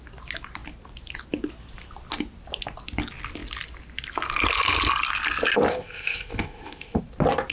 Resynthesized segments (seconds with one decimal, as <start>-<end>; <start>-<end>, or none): 5.7-7.0